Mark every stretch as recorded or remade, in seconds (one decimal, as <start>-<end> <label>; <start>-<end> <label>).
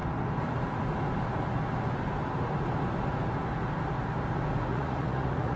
0.0-4.7 recorded; 4.7-5.6 remade